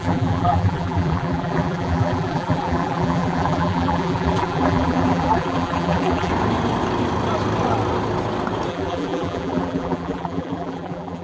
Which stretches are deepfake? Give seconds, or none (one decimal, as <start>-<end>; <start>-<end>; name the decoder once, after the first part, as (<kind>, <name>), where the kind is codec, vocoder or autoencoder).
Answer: 0.0-6.3 (vocoder, BigVGAN v2); 8.7-11.2